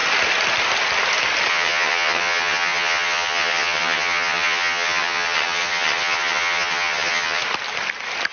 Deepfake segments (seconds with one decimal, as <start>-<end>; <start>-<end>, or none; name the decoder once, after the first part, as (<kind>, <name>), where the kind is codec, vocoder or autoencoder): 1.5-7.4 (vocoder, HiFi-GAN)